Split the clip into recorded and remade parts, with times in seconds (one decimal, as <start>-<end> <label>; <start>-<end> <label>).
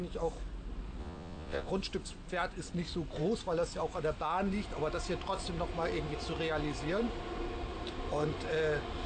0.0-1.0 recorded; 1.0-1.7 remade; 1.7-9.1 recorded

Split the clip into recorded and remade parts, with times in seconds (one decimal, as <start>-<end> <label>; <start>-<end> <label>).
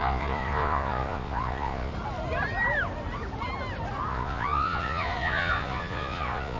0.0-1.9 remade; 1.9-4.1 recorded; 4.1-6.6 remade